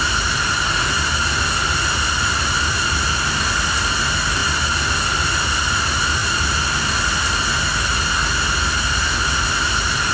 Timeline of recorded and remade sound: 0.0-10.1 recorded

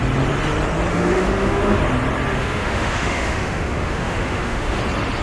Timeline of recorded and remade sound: 0.0-0.9 recorded; 0.9-1.8 remade; 1.8-2.3 recorded; 2.3-4.8 remade; 4.8-5.2 recorded

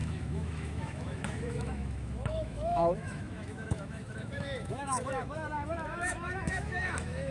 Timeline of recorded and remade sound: 0.0-7.3 remade

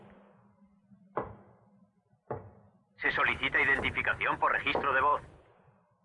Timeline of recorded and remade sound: 0.0-6.0 recorded

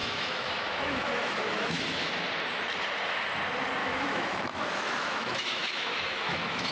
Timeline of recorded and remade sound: 0.0-1.8 remade; 1.8-3.8 recorded; 3.8-6.7 remade

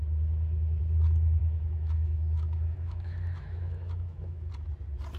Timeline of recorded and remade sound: 0.0-1.4 recorded; 1.4-4.5 remade; 4.5-5.2 recorded

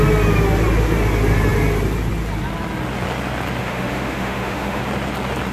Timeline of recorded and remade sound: 0.0-3.6 recorded; 3.6-4.8 remade; 4.8-5.5 recorded

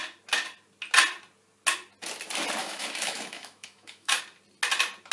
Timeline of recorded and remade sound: 0.0-2.6 recorded; 2.6-4.2 remade; 4.2-5.1 recorded